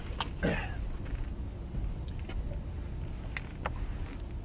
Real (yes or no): yes